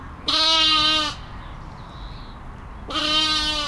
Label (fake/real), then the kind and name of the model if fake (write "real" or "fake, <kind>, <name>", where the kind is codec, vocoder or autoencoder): real